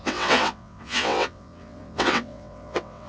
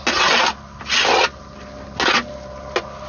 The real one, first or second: second